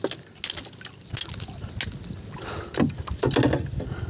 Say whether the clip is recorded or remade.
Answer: recorded